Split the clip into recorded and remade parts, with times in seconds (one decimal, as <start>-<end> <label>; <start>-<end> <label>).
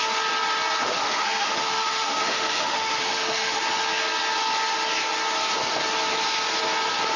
0.0-1.0 recorded; 1.0-3.6 remade; 3.6-7.2 recorded